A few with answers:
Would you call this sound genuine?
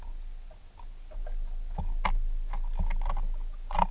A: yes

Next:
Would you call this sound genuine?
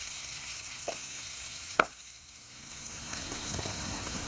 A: no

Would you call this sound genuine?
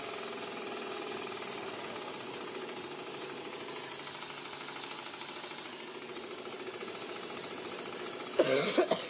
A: yes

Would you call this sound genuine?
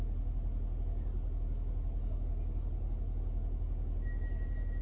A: yes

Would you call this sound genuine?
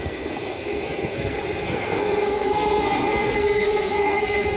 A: no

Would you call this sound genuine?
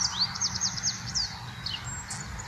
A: yes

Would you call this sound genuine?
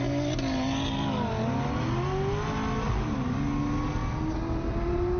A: yes